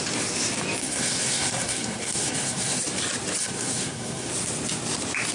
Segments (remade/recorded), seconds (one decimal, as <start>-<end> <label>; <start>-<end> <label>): 0.0-0.8 recorded; 0.8-2.8 remade; 2.8-3.4 recorded; 3.4-4.3 remade; 4.3-5.3 recorded